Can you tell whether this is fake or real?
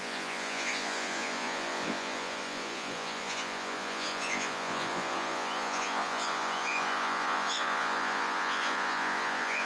fake